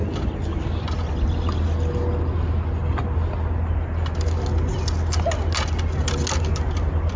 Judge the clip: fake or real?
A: real